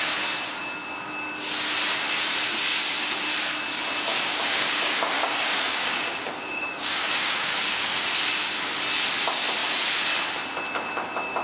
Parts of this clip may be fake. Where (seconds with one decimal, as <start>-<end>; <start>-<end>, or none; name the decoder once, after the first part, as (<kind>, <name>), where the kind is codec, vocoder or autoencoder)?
4.1-8.5 (codec, DAC)

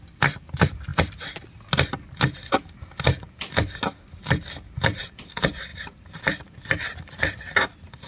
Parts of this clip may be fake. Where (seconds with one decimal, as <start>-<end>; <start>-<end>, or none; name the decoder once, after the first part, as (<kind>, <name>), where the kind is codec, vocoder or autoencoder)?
none

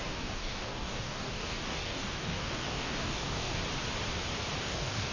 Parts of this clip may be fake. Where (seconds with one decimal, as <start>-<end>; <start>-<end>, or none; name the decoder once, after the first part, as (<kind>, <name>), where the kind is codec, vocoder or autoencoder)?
0.0-3.6 (codec, DAC); 4.6-5.1

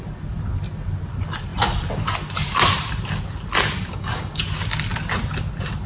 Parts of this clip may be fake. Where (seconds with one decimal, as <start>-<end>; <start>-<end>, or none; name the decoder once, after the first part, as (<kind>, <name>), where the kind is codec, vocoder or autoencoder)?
3.9-4.4 (codec, DAC)

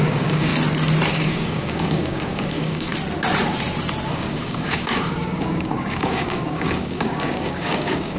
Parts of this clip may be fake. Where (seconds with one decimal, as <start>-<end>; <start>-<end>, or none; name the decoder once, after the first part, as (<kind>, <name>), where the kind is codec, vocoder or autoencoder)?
0.0-0.5 (codec, DAC); 1.1-2.9; 4.1-8.2

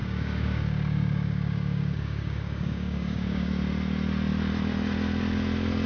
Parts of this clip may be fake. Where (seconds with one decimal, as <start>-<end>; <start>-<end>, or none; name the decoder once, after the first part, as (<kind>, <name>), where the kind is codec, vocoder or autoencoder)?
0.0-3.5 (codec, DAC)

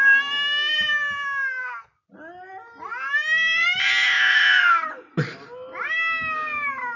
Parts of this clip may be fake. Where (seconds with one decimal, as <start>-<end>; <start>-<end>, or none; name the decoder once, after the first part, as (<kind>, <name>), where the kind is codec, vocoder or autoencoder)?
none

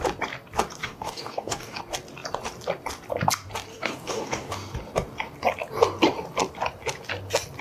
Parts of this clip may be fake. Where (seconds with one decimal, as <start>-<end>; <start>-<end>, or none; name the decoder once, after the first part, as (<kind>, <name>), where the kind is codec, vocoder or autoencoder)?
0.8-1.8 (codec, DAC); 3.7-4.5